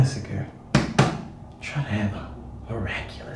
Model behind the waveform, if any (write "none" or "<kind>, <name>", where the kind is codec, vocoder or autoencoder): none